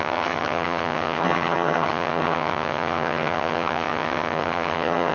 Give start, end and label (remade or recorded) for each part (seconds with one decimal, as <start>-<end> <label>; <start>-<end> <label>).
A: 0.0-5.1 remade